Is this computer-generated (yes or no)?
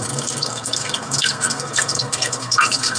yes